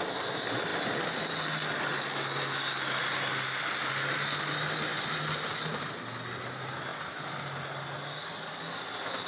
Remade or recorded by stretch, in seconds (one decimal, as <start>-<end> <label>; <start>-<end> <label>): 0.0-9.3 recorded